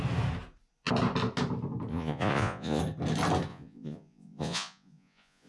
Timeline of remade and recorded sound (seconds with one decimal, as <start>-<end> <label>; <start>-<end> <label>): 0.0-1.9 recorded; 1.9-2.8 remade; 2.8-3.5 recorded; 3.5-5.5 remade